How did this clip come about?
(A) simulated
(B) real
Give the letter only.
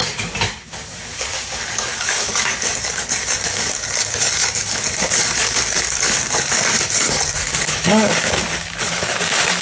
A